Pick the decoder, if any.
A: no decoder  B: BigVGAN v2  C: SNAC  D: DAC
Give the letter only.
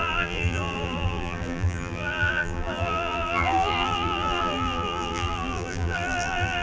B